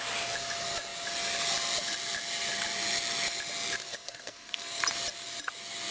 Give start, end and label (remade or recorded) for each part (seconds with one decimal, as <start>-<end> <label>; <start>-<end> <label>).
0.0-3.9 recorded; 3.9-4.8 remade; 4.8-5.9 recorded